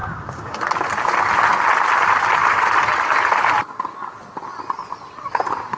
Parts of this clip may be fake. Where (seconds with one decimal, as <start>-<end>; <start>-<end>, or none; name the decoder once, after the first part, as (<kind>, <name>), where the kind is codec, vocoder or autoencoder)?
0.0-0.6 (codec, DAC)